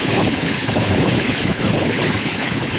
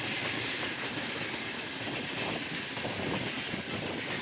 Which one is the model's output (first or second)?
first